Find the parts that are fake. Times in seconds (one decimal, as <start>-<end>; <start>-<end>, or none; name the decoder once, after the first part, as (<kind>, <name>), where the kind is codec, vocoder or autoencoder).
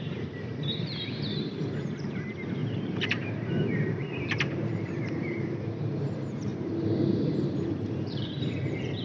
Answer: 0.0-9.0 (vocoder, BigVGAN v2)